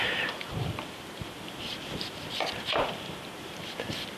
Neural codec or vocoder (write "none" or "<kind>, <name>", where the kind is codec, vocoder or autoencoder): vocoder, BigVGAN v2